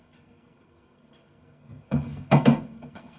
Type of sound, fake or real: fake